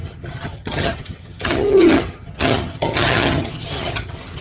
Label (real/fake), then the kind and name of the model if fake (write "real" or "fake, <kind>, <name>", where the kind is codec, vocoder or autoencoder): fake, vocoder, HiFi-GAN